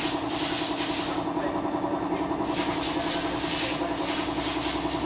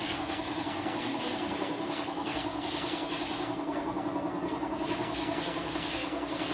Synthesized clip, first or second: second